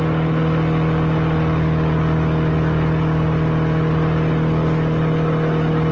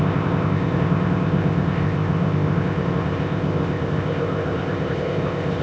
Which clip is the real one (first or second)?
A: first